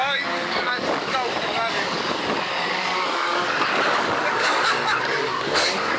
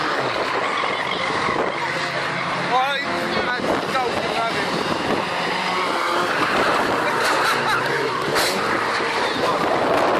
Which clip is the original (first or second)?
second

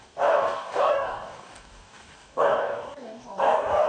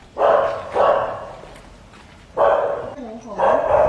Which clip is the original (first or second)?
second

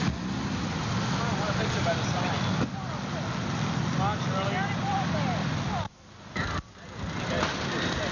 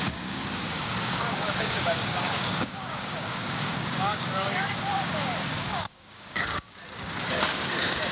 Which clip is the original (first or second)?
first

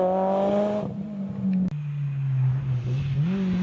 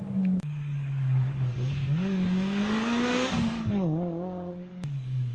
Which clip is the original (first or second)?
first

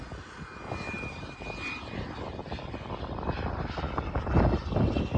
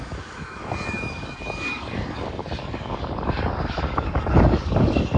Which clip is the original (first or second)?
first